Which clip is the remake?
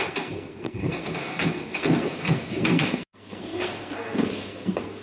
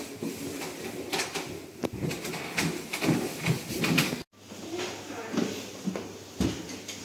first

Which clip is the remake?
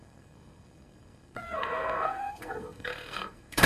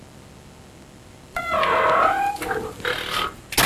first